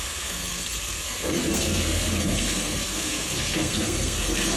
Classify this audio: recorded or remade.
remade